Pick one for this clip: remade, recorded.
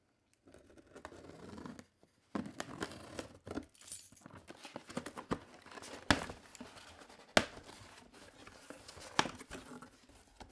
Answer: recorded